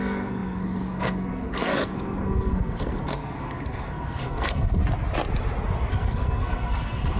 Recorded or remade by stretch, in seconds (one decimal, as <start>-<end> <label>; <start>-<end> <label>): 0.0-4.8 remade; 4.8-5.9 recorded; 5.9-7.2 remade

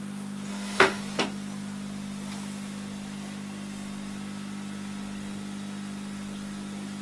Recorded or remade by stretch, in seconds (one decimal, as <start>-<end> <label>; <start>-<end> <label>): 0.0-0.5 recorded; 0.5-1.0 remade; 1.0-7.0 recorded

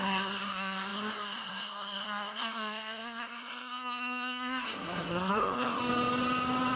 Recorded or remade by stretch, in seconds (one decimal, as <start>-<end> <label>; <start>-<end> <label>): 0.0-5.8 remade; 5.8-6.8 recorded